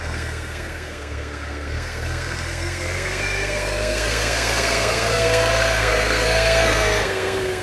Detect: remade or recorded remade